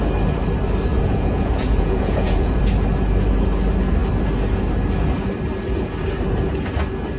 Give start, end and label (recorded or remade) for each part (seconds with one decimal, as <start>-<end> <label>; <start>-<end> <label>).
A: 0.0-0.9 recorded; 0.9-2.6 remade; 2.6-7.2 recorded